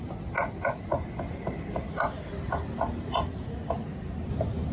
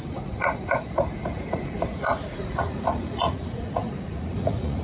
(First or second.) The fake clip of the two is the second